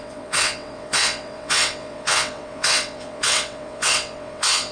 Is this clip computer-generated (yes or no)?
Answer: yes